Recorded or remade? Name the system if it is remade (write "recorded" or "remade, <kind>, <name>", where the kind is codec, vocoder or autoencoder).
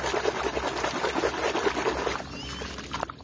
recorded